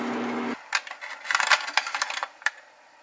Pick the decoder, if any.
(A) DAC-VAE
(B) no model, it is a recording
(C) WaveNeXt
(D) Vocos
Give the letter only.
B